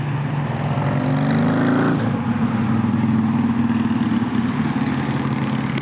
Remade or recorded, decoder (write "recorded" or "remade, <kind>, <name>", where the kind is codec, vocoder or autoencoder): recorded